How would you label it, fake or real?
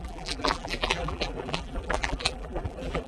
fake